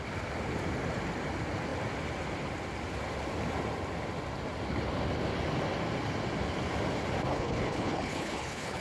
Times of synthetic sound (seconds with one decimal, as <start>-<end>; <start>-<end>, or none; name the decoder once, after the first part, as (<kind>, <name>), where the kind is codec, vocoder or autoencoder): 7.3-8.8 (codec, HILCodec)